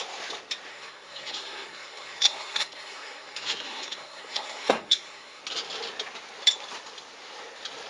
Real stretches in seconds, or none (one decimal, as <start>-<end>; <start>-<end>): 0.0-0.7; 5.4-7.9